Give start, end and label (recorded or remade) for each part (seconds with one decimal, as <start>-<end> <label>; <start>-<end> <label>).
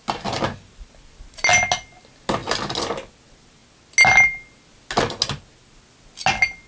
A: 0.0-6.7 recorded